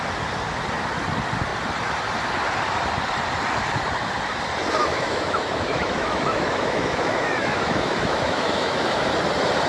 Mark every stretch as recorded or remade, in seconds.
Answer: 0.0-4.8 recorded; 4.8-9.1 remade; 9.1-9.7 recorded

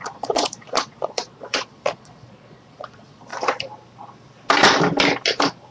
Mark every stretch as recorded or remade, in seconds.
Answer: 0.0-3.3 remade; 3.3-5.7 recorded

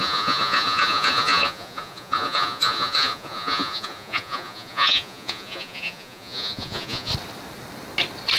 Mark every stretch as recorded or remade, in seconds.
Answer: 0.0-7.1 remade; 7.1-8.4 recorded

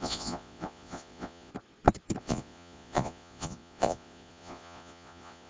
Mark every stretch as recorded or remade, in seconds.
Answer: 0.0-1.5 remade; 1.5-2.2 recorded; 2.2-5.5 remade

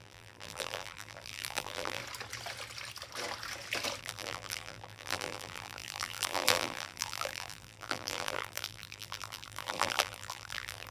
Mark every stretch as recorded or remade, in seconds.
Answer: 0.0-2.0 remade; 2.0-4.0 recorded; 4.0-10.9 remade

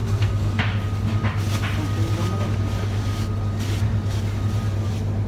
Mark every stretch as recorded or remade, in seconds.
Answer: 0.0-0.6 remade; 0.6-5.3 recorded

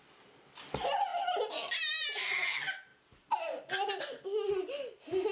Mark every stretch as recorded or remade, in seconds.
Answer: 0.0-5.3 recorded

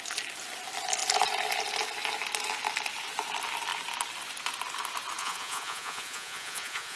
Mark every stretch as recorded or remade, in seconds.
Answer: 0.0-5.2 recorded; 5.2-7.0 remade